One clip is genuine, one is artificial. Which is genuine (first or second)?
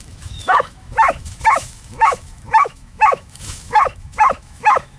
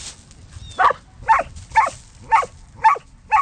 second